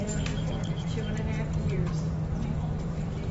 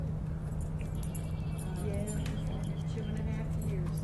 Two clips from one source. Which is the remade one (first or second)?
first